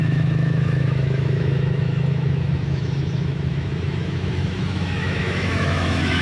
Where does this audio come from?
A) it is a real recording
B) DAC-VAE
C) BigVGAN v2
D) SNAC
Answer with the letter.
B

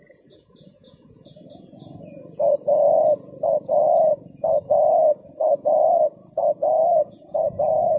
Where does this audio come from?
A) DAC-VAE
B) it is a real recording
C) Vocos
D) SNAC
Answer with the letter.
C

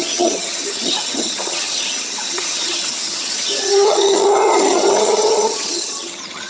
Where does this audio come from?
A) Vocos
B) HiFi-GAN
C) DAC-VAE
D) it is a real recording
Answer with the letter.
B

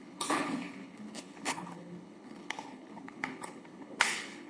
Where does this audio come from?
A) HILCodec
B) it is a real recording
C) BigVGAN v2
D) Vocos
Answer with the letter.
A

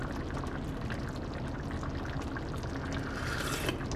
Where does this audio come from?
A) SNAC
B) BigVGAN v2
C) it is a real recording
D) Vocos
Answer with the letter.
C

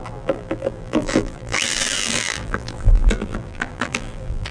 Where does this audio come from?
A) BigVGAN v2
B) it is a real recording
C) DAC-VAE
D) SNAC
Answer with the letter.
A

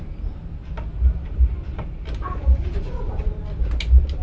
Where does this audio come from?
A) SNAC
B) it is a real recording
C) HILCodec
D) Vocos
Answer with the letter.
B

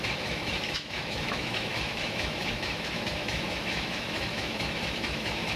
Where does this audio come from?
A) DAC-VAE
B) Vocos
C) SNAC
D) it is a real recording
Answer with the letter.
A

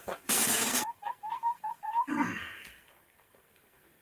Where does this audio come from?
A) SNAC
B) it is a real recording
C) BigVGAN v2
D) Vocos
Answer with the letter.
A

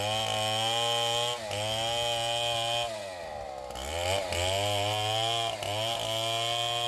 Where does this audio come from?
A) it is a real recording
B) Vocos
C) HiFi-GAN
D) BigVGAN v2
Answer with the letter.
A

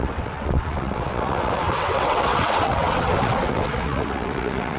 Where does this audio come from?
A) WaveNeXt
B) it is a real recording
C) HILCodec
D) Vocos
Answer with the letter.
A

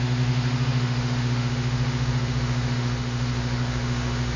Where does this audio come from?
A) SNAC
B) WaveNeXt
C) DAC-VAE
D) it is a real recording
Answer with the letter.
C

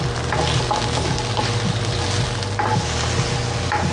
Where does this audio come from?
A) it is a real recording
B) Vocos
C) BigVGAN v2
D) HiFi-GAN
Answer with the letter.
A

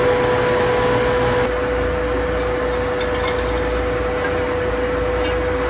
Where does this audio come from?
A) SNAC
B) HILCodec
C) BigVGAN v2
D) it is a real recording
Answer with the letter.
D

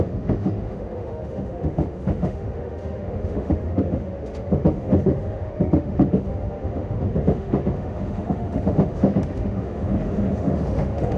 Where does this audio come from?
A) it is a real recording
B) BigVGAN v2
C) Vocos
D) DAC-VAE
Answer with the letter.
D